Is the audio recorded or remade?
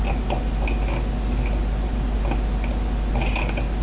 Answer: recorded